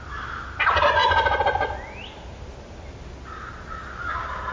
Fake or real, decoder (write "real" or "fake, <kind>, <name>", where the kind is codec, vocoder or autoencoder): real